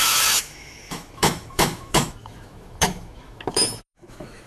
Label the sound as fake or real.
fake